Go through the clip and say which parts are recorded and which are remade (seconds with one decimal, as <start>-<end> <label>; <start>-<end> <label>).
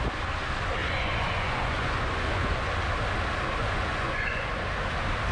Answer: 0.0-0.8 recorded; 0.8-2.7 remade; 2.7-3.6 recorded; 3.6-4.6 remade; 4.6-5.3 recorded